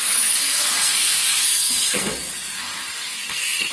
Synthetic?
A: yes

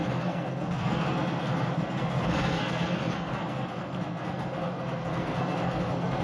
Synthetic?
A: yes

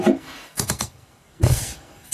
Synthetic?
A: yes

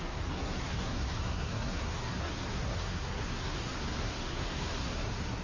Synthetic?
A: yes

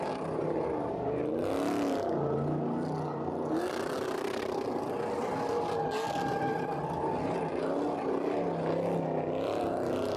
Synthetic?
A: no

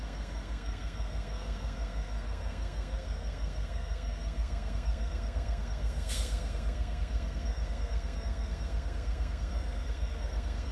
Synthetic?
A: yes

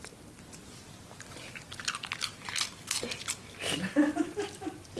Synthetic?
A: no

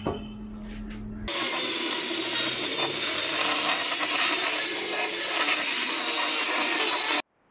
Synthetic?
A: no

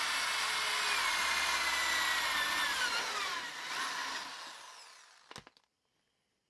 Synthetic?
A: no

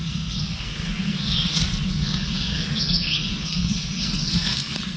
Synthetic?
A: yes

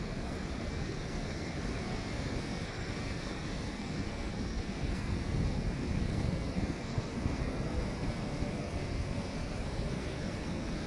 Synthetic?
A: yes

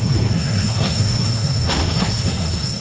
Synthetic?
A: yes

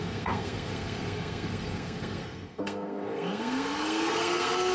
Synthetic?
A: yes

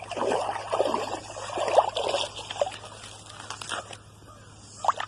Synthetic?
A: no